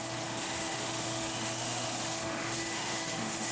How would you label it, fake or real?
fake